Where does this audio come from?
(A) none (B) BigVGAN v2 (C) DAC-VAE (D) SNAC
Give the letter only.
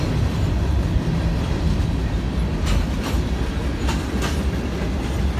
A